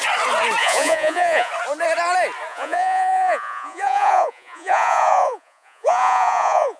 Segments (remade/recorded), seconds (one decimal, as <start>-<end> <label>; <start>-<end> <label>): 0.0-0.6 recorded; 0.6-1.5 remade; 1.5-2.5 recorded; 2.5-6.8 remade